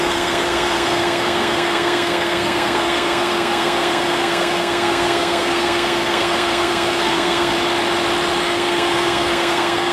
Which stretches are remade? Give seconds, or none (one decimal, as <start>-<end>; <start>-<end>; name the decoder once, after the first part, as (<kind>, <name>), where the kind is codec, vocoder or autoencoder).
0.0-7.5 (codec, SNAC); 8.4-9.9